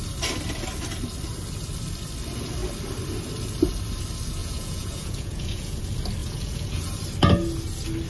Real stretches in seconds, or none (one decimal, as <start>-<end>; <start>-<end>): 0.0-4.4; 5.8-6.2; 6.8-8.1